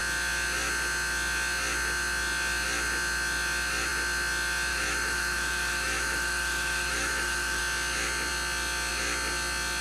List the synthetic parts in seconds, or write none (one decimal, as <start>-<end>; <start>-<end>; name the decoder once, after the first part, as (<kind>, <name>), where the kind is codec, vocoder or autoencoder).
4.7-7.6 (autoencoder, DAC-VAE)